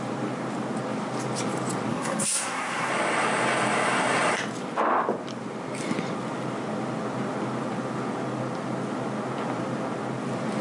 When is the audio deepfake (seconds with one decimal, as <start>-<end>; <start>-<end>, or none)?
1.9-2.9